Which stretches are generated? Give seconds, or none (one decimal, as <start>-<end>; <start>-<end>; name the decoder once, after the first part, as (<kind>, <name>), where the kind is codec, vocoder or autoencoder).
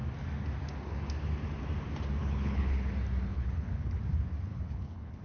2.2-2.9 (codec, HILCodec); 3.3-4.0; 4.5-5.2